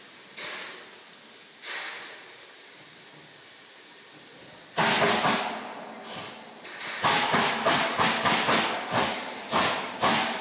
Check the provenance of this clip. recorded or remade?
recorded